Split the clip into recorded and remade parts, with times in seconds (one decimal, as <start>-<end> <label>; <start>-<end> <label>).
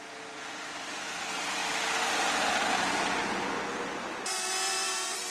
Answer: 0.0-5.3 recorded